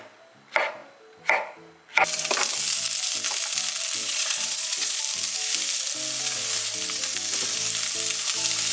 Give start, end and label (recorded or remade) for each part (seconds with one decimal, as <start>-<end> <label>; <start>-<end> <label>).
0.0-4.0 recorded; 4.0-5.0 remade; 5.0-8.7 recorded